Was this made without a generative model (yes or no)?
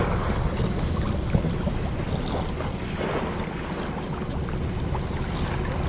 yes